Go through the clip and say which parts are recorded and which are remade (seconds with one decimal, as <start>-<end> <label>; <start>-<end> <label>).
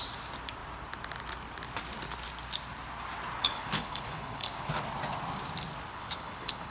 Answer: 0.0-3.4 recorded; 3.4-4.8 remade; 4.8-5.9 recorded; 5.9-6.7 remade